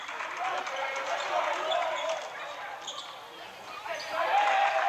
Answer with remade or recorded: recorded